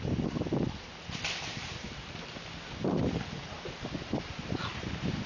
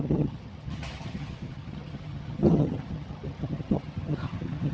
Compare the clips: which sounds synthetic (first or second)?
second